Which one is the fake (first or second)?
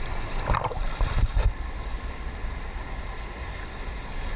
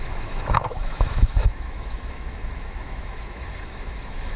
second